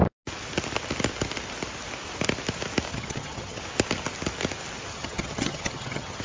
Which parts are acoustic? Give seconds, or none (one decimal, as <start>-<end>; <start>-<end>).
0.0-2.9; 3.6-4.9